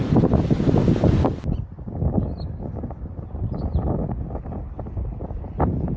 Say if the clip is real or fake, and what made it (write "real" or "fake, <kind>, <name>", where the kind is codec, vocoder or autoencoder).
real